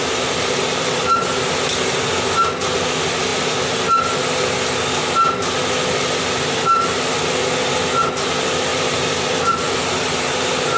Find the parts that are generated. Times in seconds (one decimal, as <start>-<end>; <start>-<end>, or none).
0.0-1.0; 8.7-9.8